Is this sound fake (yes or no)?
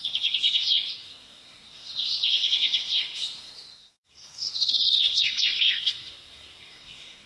yes